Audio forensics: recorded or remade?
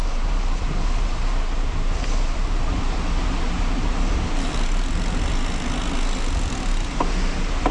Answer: recorded